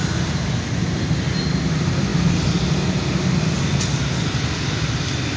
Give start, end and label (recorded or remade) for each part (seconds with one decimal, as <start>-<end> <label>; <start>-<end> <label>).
0.0-5.4 recorded